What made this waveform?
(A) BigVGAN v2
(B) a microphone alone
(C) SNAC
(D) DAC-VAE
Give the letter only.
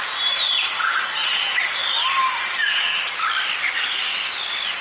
A